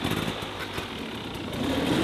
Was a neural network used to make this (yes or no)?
no